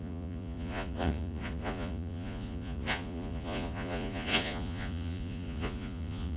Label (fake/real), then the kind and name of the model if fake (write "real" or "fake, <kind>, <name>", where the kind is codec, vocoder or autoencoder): fake, vocoder, Vocos